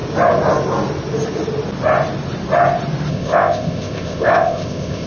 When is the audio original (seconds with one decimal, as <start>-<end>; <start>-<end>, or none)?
0.0-3.1